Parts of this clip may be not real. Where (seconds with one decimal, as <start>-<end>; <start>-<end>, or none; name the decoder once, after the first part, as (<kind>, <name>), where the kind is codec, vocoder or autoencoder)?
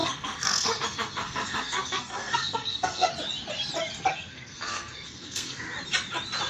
0.0-3.1 (codec, SNAC); 4.1-5.6